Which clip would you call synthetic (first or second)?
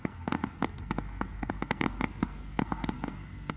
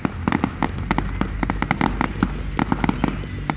first